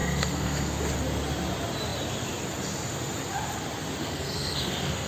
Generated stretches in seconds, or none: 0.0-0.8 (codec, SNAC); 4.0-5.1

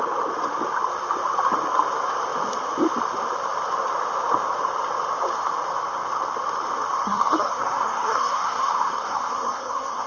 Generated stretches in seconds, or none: 7.0-10.1 (codec, SNAC)

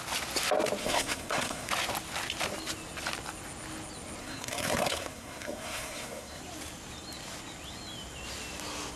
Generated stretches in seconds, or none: 0.8-1.7 (codec, SNAC); 4.2-6.4

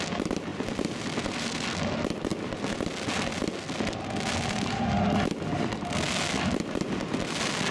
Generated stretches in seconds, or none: none

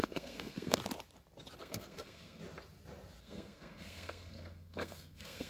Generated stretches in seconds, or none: 0.0-0.8 (codec, SNAC); 1.6-2.4; 3.2-5.5

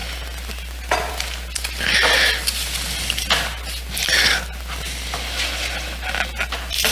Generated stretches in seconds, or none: none

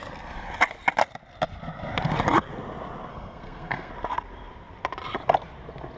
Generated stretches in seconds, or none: 3.1-3.9 (codec, SNAC)